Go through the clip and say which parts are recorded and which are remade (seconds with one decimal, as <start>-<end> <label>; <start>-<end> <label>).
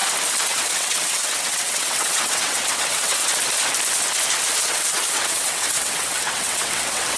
0.0-0.5 recorded; 0.5-3.2 remade; 3.2-4.6 recorded; 4.6-7.2 remade